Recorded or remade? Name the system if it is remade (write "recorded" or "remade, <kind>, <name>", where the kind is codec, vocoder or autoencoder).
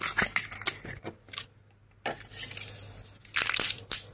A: recorded